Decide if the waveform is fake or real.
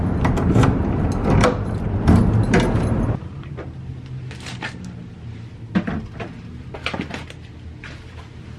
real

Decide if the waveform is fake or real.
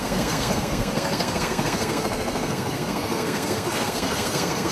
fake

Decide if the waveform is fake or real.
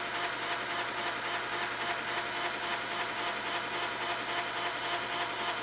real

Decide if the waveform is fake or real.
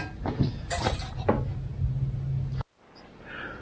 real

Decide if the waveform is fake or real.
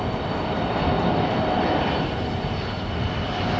real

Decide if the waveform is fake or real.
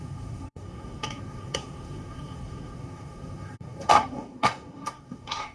fake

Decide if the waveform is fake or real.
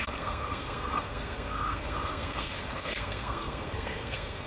fake